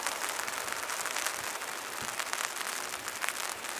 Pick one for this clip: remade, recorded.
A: recorded